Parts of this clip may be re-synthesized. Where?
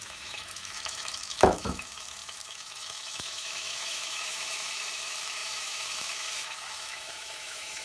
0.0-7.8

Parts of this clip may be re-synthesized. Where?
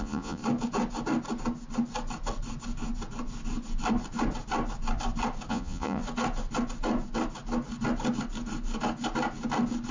0.0-0.4; 5.5-6.0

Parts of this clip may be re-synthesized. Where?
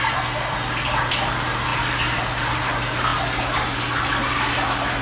none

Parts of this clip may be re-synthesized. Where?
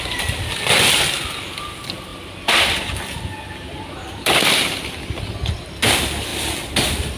2.1-4.5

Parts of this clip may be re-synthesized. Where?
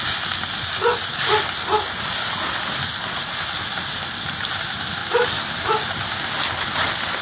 none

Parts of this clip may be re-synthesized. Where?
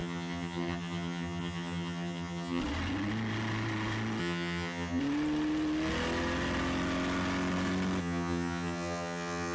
0.0-2.6; 4.2-5.0; 8.0-9.5